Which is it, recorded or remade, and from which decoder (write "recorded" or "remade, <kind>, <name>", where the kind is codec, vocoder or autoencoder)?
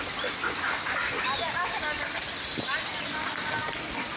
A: recorded